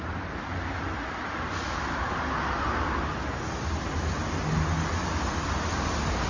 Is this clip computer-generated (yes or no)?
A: no